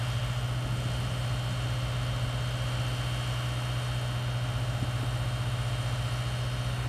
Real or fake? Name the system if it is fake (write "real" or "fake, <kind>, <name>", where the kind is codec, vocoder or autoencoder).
real